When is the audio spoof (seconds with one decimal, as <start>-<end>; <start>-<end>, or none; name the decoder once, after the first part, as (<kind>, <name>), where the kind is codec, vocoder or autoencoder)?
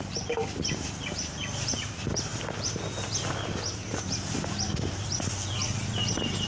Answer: none